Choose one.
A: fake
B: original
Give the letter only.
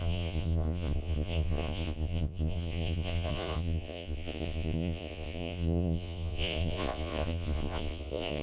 A